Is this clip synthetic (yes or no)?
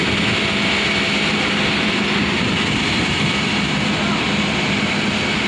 no